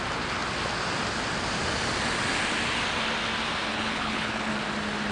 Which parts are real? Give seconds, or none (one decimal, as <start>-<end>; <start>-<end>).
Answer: 0.0-3.7; 4.5-5.1